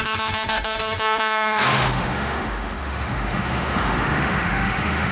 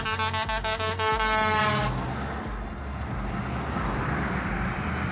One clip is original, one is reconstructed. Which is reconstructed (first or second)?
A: first